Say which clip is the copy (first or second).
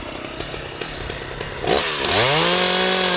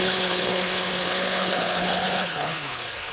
second